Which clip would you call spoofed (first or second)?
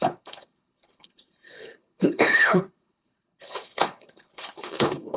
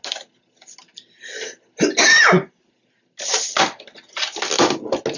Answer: first